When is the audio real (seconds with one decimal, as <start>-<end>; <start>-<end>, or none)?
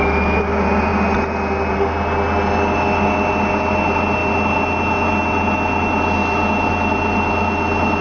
0.0-8.0